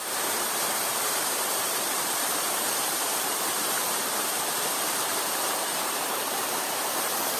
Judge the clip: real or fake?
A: fake